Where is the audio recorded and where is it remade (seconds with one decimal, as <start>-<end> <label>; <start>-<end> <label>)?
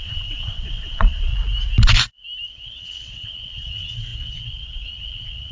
0.0-1.3 remade; 1.3-2.5 recorded; 2.5-5.5 remade